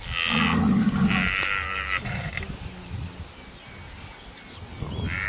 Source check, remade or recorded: recorded